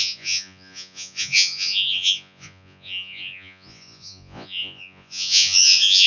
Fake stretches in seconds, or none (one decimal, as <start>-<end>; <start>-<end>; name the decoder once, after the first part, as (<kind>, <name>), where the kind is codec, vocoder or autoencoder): 0.0-6.1 (vocoder, Vocos)